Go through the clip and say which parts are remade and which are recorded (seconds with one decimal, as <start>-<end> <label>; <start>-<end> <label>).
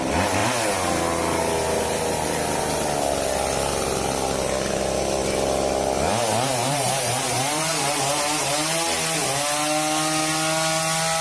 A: 0.0-6.6 recorded; 6.6-7.7 remade; 7.7-11.2 recorded